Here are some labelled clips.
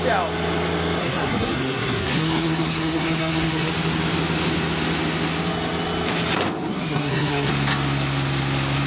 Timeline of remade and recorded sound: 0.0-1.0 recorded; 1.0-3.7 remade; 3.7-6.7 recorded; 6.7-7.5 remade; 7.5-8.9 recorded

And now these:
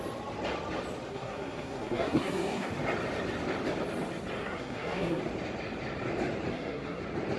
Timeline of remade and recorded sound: 0.0-1.1 recorded; 1.1-2.7 remade; 2.7-4.4 recorded; 4.4-5.2 remade; 5.2-6.5 recorded; 6.5-7.0 remade; 7.0-7.4 recorded

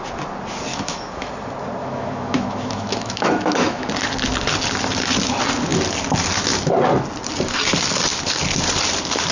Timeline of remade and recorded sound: 0.0-0.7 recorded; 0.7-1.3 remade; 1.3-1.8 recorded; 1.8-3.9 remade; 3.9-9.3 recorded

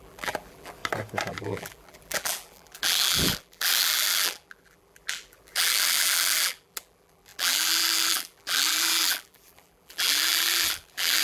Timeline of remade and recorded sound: 0.0-0.8 remade; 0.8-1.3 recorded; 1.3-11.2 remade

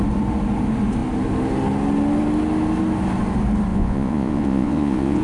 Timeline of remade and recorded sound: 0.0-3.7 recorded; 3.7-5.2 remade